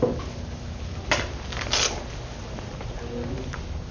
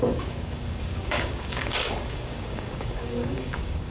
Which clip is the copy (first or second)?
second